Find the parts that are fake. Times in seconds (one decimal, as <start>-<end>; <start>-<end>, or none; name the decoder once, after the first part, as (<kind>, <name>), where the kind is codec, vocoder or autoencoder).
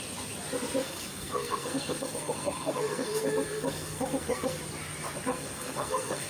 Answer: 0.8-4.6 (codec, SNAC); 5.3-6.3